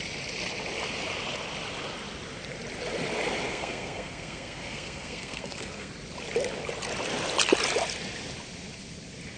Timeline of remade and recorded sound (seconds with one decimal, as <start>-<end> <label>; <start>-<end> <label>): 0.0-3.5 recorded; 3.5-5.9 remade; 5.9-9.4 recorded